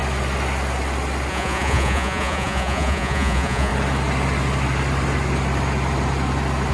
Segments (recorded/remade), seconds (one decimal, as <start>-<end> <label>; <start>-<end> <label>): 0.0-1.3 recorded; 1.3-3.7 remade; 3.7-6.7 recorded